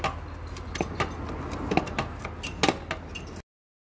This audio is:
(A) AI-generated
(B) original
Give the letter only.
B